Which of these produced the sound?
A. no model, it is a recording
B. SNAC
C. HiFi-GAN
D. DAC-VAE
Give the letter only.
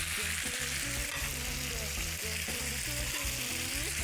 A